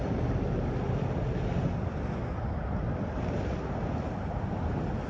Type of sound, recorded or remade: recorded